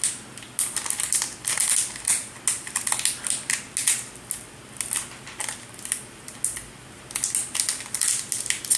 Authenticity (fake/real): real